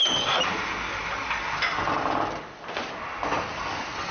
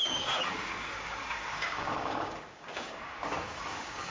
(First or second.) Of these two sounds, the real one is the first